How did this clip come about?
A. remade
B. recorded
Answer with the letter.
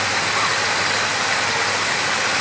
B